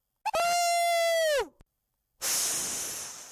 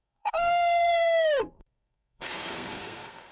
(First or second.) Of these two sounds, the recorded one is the first